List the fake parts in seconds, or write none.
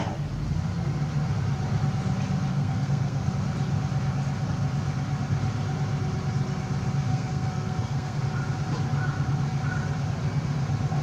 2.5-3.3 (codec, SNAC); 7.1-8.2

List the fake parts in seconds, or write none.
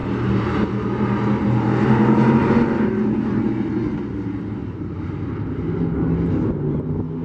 0.0-3.4 (vocoder, BigVGAN v2); 4.6-5.2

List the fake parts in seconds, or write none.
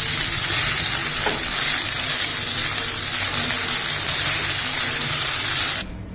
none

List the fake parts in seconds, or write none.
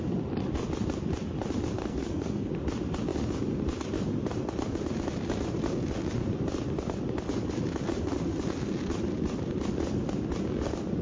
1.8-2.5 (codec, SNAC)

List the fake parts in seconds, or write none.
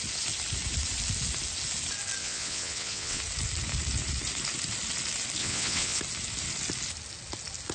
2.2-3.2 (vocoder, WaveNeXt); 5.4-6.0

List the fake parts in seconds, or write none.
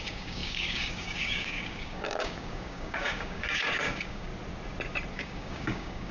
0.0-4.3 (codec, DAC); 5.1-6.1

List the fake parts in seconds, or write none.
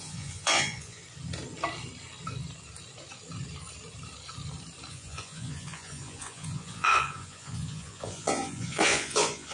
0.0-1.0 (vocoder, Vocos); 4.9-9.5